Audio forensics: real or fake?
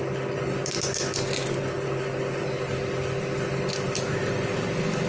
real